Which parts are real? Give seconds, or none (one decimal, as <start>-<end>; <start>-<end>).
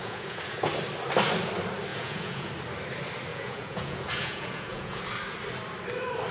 0.7-1.9; 2.5-3.3; 5.0-6.3